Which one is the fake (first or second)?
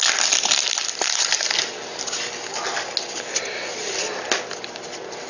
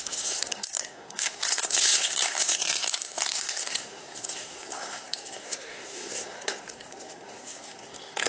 second